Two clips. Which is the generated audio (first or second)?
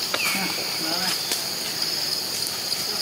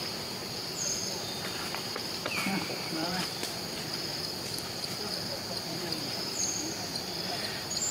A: second